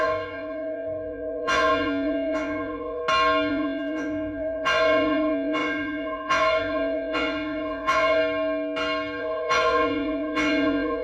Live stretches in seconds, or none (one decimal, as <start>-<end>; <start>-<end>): 3.0-3.5; 8.2-9.2